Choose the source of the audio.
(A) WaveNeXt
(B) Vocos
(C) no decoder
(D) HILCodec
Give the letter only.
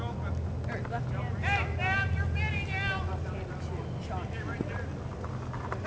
C